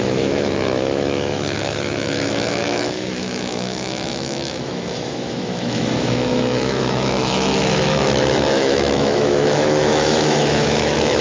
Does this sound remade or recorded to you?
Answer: remade